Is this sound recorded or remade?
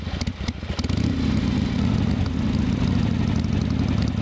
recorded